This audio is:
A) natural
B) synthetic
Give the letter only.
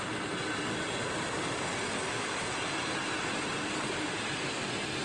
A